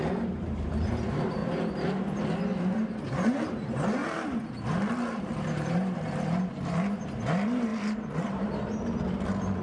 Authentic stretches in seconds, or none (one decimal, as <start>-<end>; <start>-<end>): 1.4-2.6; 4.0-5.2